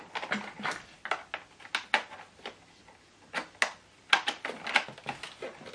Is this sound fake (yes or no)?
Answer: no